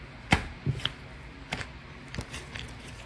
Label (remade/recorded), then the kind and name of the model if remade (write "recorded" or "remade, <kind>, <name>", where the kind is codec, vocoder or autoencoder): recorded